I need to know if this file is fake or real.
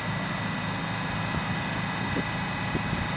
real